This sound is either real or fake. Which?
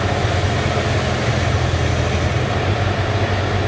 real